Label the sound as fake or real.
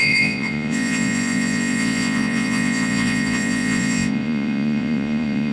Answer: fake